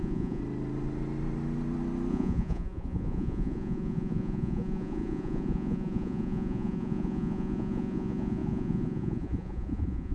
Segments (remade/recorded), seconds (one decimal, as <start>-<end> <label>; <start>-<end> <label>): 0.0-0.4 remade; 0.4-2.1 recorded; 2.1-10.1 remade